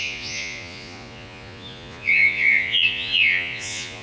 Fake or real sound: fake